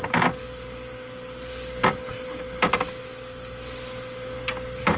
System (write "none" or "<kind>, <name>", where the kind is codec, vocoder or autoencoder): none